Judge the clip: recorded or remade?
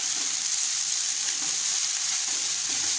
recorded